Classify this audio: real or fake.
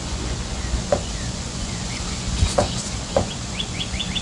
fake